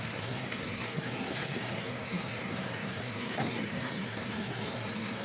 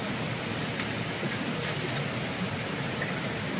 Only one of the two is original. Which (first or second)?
second